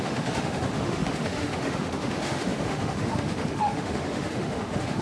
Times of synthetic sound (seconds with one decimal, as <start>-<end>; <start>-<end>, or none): 0.0-5.0